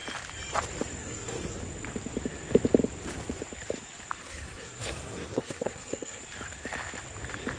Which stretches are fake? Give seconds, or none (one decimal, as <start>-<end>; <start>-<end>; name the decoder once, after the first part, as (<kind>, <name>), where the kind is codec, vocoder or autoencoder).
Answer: 1.0-1.6 (codec, SNAC); 4.2-6.2